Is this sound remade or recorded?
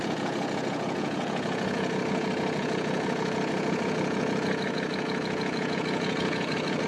remade